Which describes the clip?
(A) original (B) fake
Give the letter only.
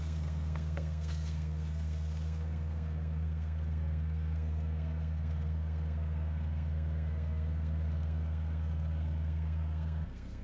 B